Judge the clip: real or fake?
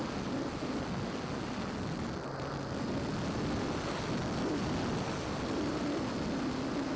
real